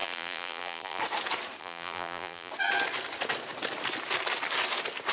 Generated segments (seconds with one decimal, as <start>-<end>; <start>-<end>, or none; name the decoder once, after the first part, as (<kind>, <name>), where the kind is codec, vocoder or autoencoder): 0.0-1.0 (vocoder, BigVGAN v2); 1.6-2.5